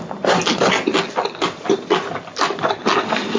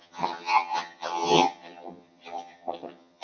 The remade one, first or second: second